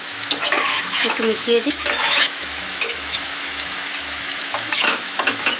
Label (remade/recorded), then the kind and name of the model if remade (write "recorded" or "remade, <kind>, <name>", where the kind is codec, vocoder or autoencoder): remade, autoencoder, DAC-VAE